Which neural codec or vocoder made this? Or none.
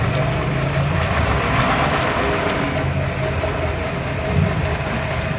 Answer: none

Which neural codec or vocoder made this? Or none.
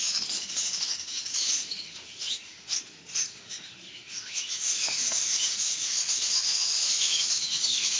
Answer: autoencoder, DAC-VAE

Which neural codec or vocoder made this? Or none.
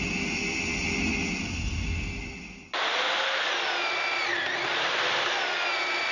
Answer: none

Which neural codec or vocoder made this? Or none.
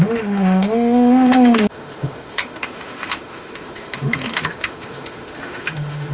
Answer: autoencoder, DAC-VAE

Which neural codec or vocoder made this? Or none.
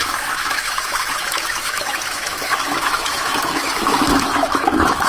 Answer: autoencoder, DAC-VAE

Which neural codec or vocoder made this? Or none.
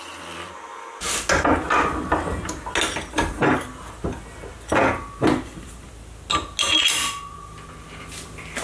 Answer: none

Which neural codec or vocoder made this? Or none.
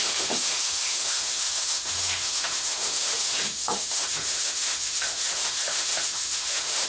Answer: autoencoder, DAC-VAE